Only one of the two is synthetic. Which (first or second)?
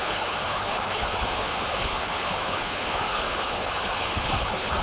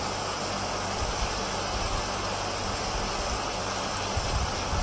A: first